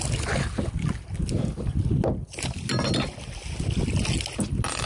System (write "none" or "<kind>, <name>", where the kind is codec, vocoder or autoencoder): none